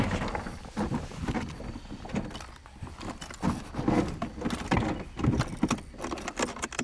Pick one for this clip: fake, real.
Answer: real